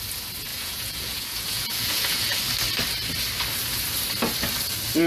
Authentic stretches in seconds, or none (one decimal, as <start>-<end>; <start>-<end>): 0.0-0.5; 2.4-5.1